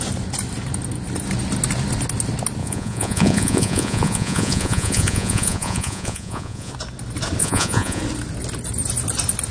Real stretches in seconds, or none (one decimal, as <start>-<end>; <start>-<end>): 0.0-2.6; 6.7-7.4; 8.0-9.5